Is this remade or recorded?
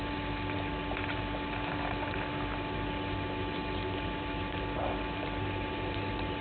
recorded